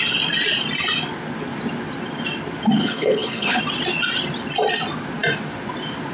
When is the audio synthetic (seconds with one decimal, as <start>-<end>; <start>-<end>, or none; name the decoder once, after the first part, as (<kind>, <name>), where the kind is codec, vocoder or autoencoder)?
2.8-3.6 (codec, HILCodec)

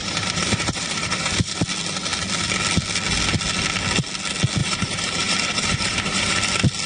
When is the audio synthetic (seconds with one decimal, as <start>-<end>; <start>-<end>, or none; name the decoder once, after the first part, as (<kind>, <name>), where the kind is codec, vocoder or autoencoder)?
0.0-1.6 (vocoder, BigVGAN v2); 4.6-6.4

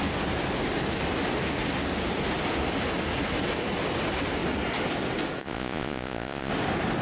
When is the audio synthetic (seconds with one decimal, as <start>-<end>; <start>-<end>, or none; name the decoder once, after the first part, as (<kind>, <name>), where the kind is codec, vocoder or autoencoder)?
5.4-6.5 (vocoder, Vocos)

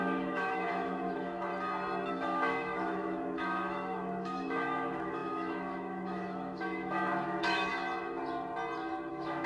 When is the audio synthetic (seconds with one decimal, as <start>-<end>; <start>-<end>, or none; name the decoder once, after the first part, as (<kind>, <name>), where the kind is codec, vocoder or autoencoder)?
0.0-1.5 (autoencoder, DAC-VAE); 2.1-7.7; 9.1-9.5